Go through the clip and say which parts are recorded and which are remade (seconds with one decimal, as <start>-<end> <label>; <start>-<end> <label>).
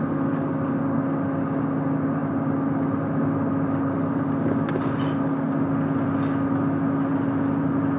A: 0.0-8.0 recorded